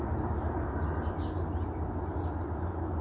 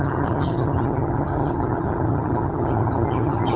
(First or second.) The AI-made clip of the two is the second